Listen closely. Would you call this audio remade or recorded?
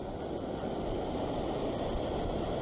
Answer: recorded